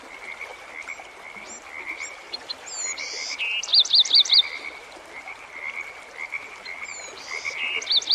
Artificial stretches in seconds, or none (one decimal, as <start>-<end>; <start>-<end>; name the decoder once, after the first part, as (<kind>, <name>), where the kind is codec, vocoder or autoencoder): 0.0-0.5 (vocoder, BigVGAN v2); 1.7-8.1